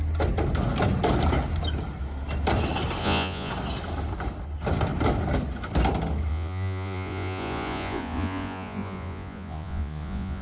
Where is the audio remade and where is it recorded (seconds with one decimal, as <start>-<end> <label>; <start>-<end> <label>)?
0.0-3.0 recorded; 3.0-3.5 remade; 3.5-6.3 recorded; 6.3-10.4 remade